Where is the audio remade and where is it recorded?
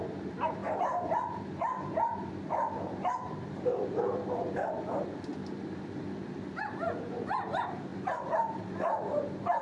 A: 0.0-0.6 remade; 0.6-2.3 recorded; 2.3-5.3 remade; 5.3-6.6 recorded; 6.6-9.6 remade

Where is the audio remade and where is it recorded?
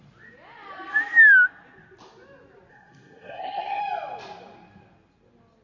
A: 0.0-2.7 recorded; 2.7-3.8 remade; 3.8-5.6 recorded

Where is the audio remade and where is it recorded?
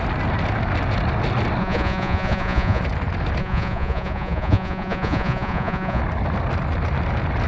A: 0.0-1.6 recorded; 1.6-2.8 remade; 2.8-3.4 recorded; 3.4-6.0 remade; 6.0-7.5 recorded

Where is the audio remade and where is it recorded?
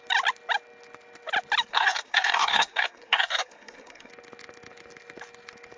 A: 0.0-1.7 recorded; 1.7-4.1 remade; 4.1-5.8 recorded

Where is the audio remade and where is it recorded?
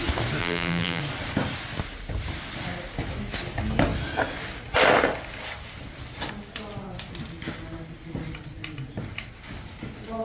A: 0.0-0.4 recorded; 0.4-1.0 remade; 1.0-10.2 recorded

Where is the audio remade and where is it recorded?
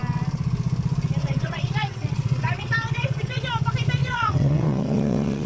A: 0.0-1.2 recorded; 1.2-3.5 remade; 3.5-4.0 recorded; 4.0-5.5 remade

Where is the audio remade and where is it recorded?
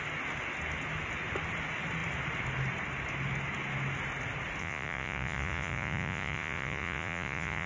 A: 0.0-4.6 recorded; 4.6-7.7 remade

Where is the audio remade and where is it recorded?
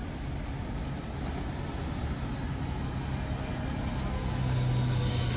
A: 0.0-5.4 recorded